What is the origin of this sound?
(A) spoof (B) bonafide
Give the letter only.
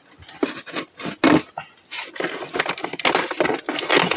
B